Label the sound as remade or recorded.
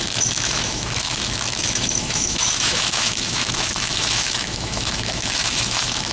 remade